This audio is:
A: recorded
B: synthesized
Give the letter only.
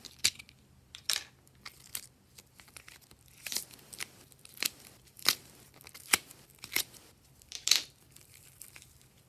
B